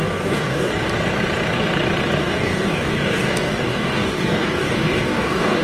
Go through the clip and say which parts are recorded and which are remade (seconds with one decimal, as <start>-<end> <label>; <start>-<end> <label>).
0.0-0.7 remade; 0.7-2.2 recorded; 2.2-5.6 remade